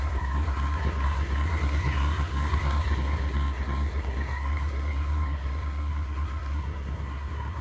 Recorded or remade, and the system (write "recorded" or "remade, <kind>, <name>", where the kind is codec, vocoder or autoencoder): remade, codec, SNAC